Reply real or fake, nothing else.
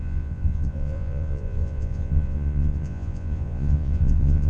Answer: fake